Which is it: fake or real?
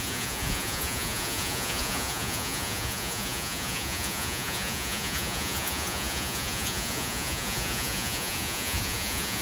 fake